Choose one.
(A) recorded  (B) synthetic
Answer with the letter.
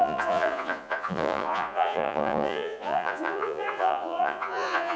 B